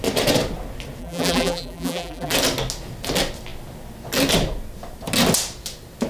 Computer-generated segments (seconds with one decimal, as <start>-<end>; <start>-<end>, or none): 1.0-2.3